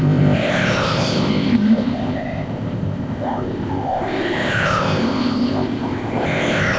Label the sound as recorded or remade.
remade